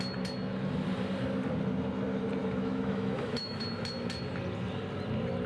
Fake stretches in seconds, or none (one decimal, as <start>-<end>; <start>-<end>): 2.4-3.6

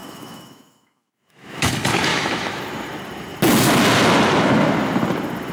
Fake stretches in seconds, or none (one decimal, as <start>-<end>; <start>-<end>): 0.0-1.7; 2.1-2.6

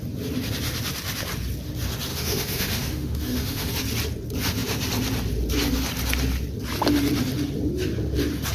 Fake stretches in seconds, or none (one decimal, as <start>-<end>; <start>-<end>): 2.1-3.7

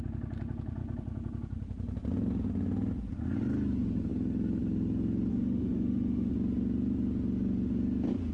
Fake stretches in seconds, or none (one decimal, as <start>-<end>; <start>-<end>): 5.3-6.3